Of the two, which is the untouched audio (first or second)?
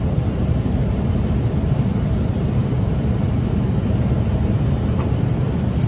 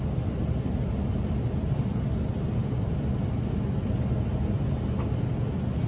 second